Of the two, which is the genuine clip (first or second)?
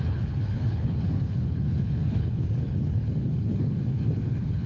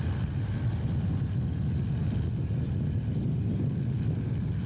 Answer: second